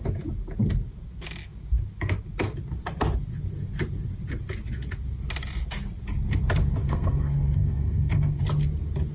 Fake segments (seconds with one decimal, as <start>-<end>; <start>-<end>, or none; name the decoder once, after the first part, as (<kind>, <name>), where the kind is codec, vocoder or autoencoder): 6.8-8.4 (codec, SNAC)